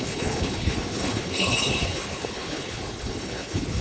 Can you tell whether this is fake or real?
fake